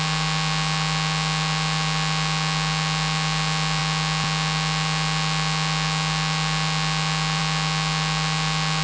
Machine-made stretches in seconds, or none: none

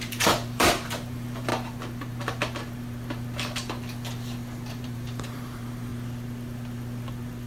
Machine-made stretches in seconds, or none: 0.0-1.5 (vocoder, BigVGAN v2); 4.7-5.9

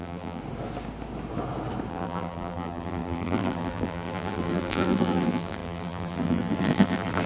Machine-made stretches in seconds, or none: 0.0-0.4 (vocoder, BigVGAN v2); 1.9-7.3

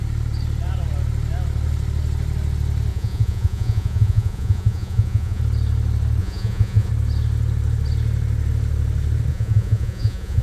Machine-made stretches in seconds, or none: 2.9-5.4 (vocoder, Vocos); 6.2-6.9; 9.3-10.4